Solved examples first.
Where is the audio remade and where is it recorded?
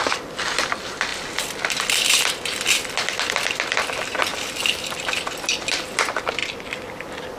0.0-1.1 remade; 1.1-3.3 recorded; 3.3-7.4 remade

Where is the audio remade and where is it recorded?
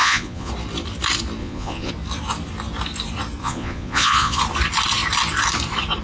0.0-0.5 remade; 0.5-1.4 recorded; 1.4-1.9 remade; 1.9-3.4 recorded; 3.4-4.4 remade; 4.4-6.0 recorded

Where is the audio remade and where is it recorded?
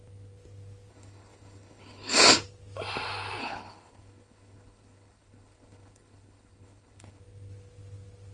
0.0-0.9 recorded; 0.9-2.2 remade; 2.2-3.4 recorded; 3.4-7.2 remade; 7.2-8.3 recorded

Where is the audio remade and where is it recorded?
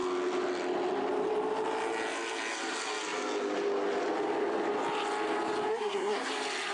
0.0-5.7 recorded; 5.7-6.3 remade; 6.3-6.7 recorded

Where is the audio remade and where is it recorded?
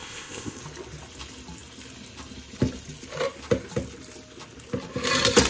0.0-0.6 remade; 0.6-5.5 recorded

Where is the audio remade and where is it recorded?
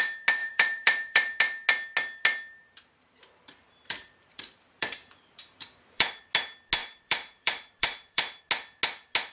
0.0-0.4 recorded; 0.4-1.4 remade; 1.4-2.6 recorded; 2.6-6.2 remade; 6.2-6.8 recorded; 6.8-8.4 remade; 8.4-9.3 recorded